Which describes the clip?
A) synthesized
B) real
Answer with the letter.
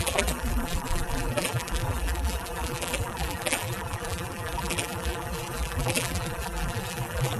A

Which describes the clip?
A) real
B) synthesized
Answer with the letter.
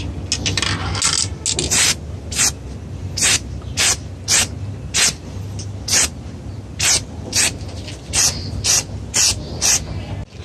A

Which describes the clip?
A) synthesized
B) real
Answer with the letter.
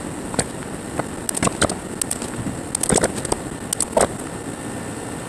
B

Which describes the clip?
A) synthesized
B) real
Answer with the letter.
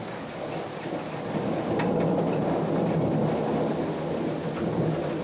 B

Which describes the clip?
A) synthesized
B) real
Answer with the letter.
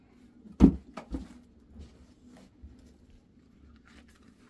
B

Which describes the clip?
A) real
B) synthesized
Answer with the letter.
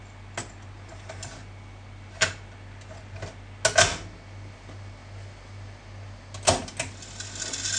A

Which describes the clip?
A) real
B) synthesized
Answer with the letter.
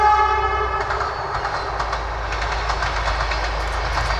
A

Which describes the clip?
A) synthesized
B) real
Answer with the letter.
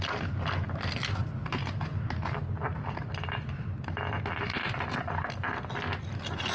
B